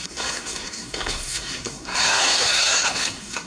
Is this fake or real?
fake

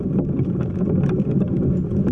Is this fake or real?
real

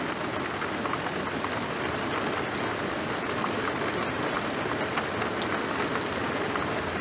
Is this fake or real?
real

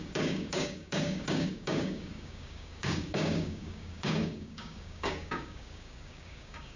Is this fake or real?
fake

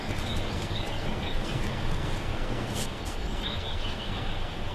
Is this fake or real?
fake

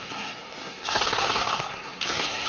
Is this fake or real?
fake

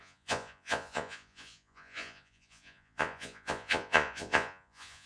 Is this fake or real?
fake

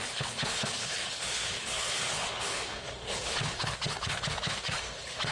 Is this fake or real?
fake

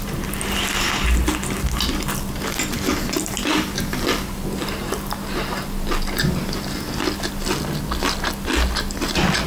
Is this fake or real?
real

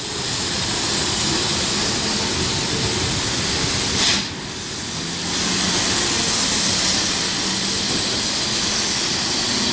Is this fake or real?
real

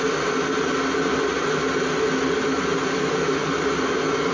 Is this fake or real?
real